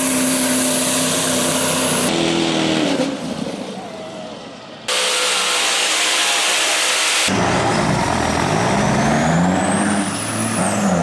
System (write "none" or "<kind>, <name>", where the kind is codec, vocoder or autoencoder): none